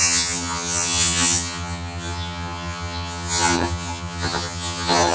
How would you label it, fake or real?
fake